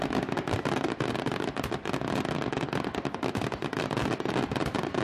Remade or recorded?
recorded